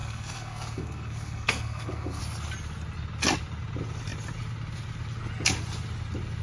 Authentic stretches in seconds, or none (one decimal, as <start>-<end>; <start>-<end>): 2.2-6.4